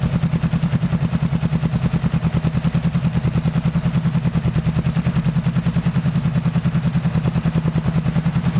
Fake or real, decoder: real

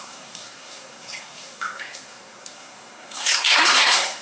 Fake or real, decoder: fake, codec, SNAC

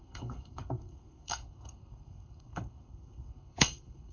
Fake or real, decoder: fake, codec, SNAC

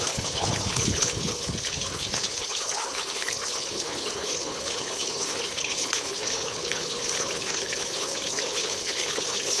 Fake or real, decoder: fake, codec, HILCodec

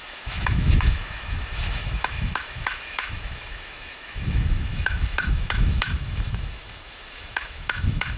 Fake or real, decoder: fake, autoencoder, DAC-VAE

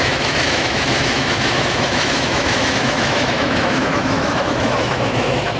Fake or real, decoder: fake, autoencoder, DAC-VAE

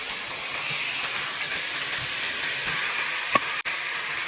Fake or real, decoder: real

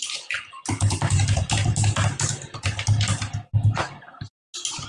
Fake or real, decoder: real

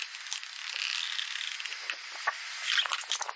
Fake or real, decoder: real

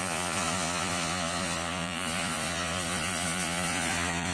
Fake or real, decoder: fake, vocoder, Vocos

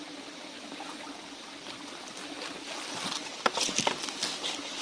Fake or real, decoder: real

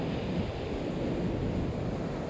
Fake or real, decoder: real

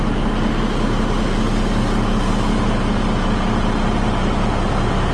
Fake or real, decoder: real